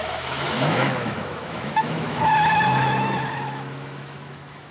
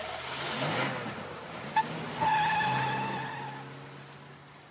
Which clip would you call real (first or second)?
second